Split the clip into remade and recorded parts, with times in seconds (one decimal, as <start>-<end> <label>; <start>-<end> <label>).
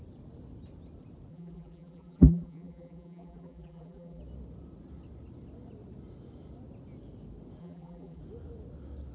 0.0-1.3 recorded; 1.3-4.2 remade; 4.2-7.6 recorded; 7.6-8.2 remade; 8.2-9.1 recorded